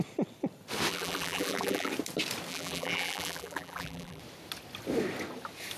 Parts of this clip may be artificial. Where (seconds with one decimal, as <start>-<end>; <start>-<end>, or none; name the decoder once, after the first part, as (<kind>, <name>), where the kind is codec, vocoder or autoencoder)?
0.9-1.9 (vocoder, BigVGAN v2); 2.5-4.2